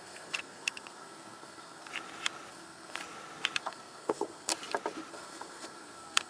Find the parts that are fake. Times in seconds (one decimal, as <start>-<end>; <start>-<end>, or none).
0.0-1.9; 2.5-3.0; 3.6-4.5; 5.1-6.3

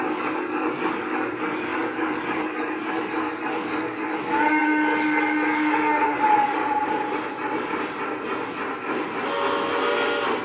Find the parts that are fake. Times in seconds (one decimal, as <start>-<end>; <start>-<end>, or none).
0.0-6.6